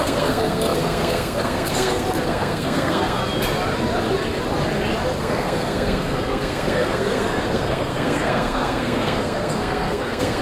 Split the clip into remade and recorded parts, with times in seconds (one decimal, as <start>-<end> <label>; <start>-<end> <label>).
0.0-3.2 remade; 3.2-5.2 recorded; 5.2-10.4 remade